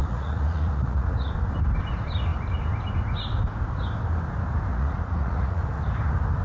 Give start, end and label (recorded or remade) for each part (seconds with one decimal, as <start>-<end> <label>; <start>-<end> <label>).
0.0-1.3 remade; 1.3-4.7 recorded; 4.7-5.6 remade; 5.6-6.4 recorded